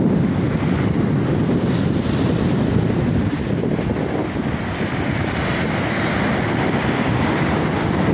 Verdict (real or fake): real